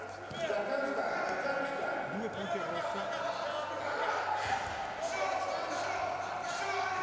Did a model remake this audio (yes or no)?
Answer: no